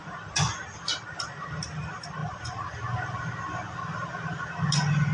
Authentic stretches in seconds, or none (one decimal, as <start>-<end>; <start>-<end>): 0.0-5.1